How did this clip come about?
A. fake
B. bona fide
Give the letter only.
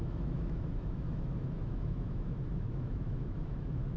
A